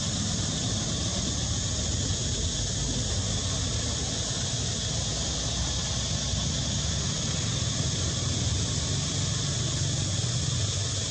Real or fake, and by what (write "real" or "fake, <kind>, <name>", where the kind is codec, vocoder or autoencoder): real